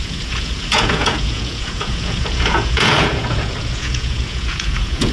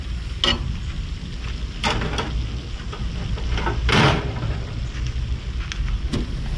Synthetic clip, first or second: first